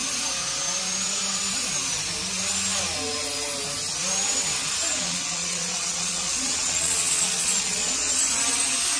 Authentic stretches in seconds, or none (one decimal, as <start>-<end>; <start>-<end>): 0.0-4.9; 8.2-9.0